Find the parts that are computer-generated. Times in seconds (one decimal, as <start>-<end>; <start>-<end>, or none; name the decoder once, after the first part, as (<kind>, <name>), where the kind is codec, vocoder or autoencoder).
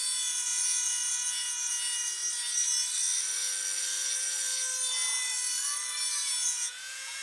0.0-2.2 (vocoder, Vocos); 6.3-7.2